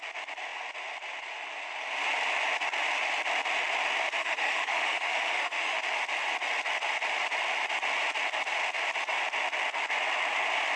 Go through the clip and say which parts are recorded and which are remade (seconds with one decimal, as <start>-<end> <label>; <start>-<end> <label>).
0.0-4.2 recorded; 4.2-5.8 remade; 5.8-10.8 recorded